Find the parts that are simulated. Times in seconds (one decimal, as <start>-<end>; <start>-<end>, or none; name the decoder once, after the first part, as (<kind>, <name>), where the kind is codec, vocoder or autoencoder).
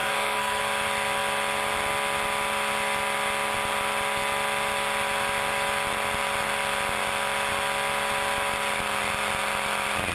0.0-0.6 (codec, SNAC)